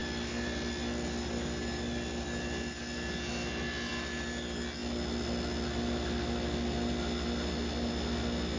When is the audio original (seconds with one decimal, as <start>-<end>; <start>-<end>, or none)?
0.0-8.6